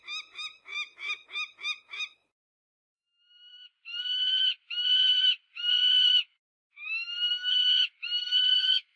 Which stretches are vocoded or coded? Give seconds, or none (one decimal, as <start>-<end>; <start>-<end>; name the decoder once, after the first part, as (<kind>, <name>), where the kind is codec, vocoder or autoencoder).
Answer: 8.5-9.0 (codec, SNAC)